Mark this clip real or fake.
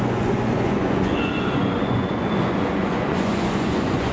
fake